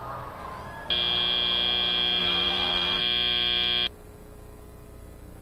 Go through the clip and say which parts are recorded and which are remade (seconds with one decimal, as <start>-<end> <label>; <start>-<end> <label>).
0.0-2.2 recorded; 2.2-3.0 remade; 3.0-5.4 recorded